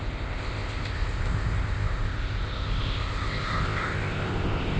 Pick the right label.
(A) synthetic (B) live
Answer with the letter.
A